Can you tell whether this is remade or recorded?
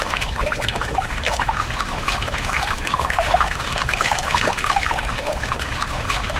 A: remade